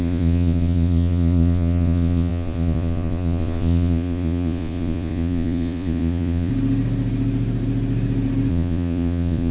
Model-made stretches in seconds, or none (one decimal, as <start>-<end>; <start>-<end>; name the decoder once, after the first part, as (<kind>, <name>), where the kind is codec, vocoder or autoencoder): 0.0-6.5 (vocoder, Vocos); 8.5-9.5